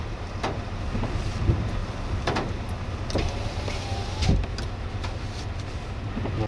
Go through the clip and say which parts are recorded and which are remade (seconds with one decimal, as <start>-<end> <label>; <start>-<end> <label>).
0.0-6.5 recorded